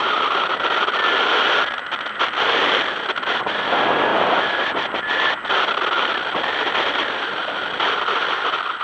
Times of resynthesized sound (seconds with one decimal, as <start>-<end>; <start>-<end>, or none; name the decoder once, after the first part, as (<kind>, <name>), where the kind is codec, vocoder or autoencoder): 0.0-0.8 (vocoder, BigVGAN v2); 4.1-8.1